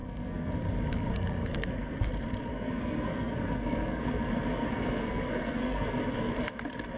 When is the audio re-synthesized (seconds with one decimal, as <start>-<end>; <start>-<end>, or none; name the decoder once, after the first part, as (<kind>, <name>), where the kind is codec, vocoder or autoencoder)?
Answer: 0.0-0.5 (codec, SNAC); 1.1-2.1; 2.5-6.3